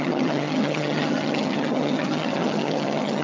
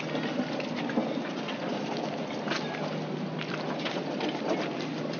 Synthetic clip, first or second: first